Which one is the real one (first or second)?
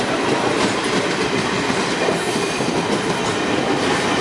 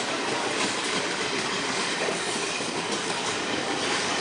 first